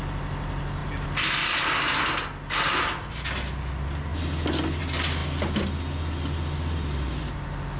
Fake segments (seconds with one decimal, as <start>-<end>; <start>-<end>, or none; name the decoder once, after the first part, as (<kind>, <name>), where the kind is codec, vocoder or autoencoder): none